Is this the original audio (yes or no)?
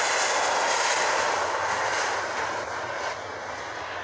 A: yes